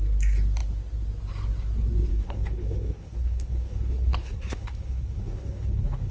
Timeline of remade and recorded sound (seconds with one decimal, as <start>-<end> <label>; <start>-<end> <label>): 0.0-2.1 recorded; 2.1-6.1 remade

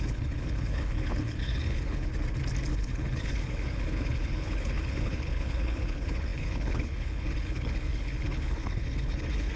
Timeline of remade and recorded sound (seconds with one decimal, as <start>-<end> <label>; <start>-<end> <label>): 0.0-2.1 remade; 2.1-2.7 recorded; 2.7-9.6 remade